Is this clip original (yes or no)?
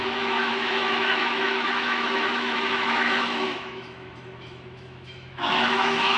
no